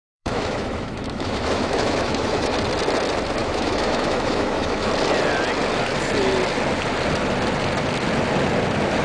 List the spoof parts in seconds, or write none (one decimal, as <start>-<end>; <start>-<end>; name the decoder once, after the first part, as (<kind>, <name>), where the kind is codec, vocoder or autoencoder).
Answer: 0.0-2.5 (autoencoder, DAC-VAE); 3.4-4.9